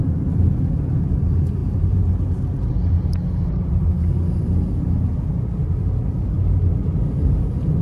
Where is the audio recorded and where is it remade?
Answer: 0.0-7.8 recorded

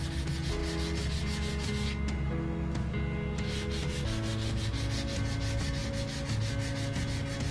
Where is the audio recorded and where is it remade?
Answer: 0.0-7.5 recorded

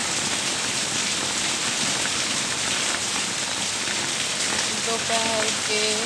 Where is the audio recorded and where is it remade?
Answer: 0.0-4.3 remade; 4.3-6.1 recorded

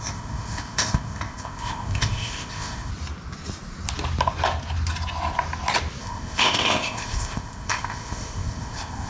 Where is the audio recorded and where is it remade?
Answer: 0.0-2.9 remade; 2.9-6.0 recorded; 6.0-9.1 remade

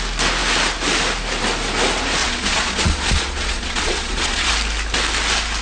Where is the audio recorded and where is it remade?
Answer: 0.0-2.2 recorded; 2.2-4.5 remade; 4.5-5.6 recorded

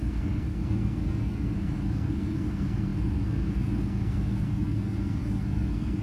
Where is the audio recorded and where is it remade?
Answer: 0.0-6.0 remade

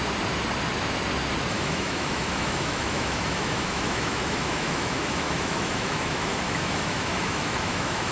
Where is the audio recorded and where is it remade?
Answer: 0.0-1.5 recorded; 1.5-8.1 remade

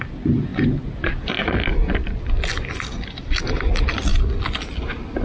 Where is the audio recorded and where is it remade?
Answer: 0.0-5.2 recorded